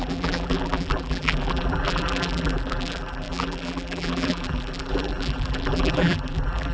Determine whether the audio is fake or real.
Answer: fake